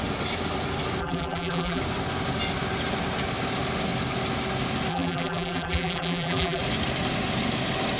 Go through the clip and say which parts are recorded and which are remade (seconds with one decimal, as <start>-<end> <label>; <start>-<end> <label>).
0.0-1.0 recorded; 1.0-1.8 remade; 1.8-4.9 recorded; 4.9-6.6 remade; 6.6-8.0 recorded